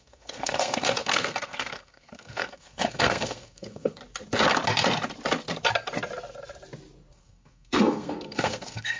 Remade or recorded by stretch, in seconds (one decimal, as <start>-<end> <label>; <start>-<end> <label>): 0.0-4.0 remade; 4.0-7.1 recorded; 7.1-9.0 remade